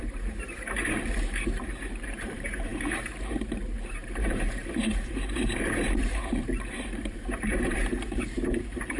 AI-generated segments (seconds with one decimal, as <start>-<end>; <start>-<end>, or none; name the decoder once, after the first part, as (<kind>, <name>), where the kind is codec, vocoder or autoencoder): 0.0-9.0 (vocoder, BigVGAN v2)